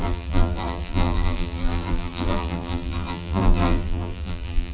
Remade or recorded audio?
remade